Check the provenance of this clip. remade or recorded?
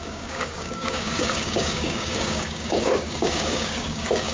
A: remade